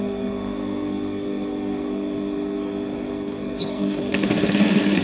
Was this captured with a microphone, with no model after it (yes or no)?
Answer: no